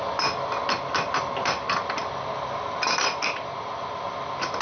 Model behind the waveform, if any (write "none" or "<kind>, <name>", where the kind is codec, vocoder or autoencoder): none